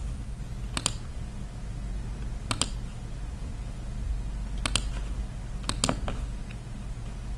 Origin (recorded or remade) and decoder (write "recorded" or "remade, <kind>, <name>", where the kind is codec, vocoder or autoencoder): recorded